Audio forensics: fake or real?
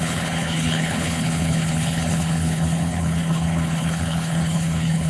fake